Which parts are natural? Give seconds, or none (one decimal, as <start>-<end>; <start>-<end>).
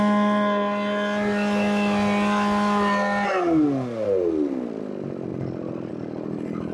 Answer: 0.0-6.7